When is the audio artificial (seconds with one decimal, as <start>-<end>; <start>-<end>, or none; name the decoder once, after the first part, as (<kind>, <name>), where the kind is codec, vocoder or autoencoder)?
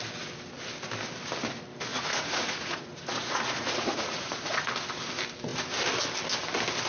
1.9-4.7 (vocoder, Vocos)